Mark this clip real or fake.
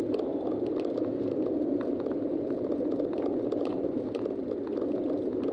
real